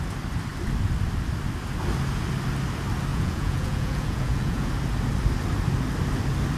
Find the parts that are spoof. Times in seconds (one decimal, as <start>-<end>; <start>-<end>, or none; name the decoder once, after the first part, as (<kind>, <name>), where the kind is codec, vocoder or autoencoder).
3.1-4.7 (vocoder, Vocos)